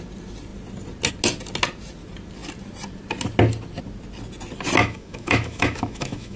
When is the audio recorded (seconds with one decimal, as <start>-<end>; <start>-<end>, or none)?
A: 0.0-4.8